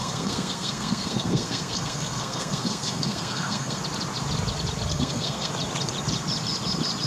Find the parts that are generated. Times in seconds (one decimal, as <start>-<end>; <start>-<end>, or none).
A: 0.0-3.8; 4.9-5.5